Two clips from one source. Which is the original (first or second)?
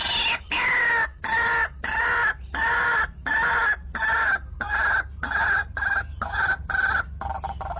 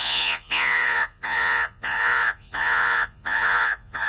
first